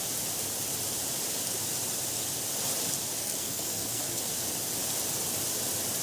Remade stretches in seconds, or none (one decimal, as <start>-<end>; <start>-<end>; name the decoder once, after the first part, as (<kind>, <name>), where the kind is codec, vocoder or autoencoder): 3.2-4.3 (codec, SNAC)